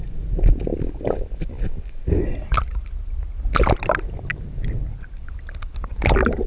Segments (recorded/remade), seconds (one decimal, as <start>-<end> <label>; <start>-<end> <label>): 0.0-6.5 recorded